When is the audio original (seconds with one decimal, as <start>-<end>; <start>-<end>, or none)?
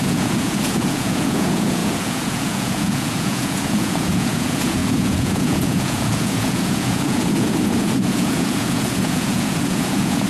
none